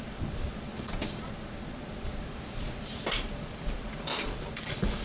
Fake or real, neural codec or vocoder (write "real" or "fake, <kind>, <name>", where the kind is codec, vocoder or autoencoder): fake, vocoder, BigVGAN v2